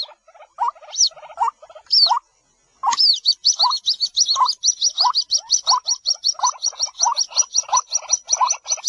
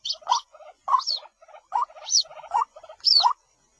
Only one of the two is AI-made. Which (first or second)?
second